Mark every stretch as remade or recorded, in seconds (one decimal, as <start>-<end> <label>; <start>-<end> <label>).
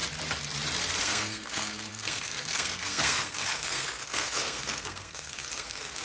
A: 0.0-1.0 recorded; 1.0-6.0 remade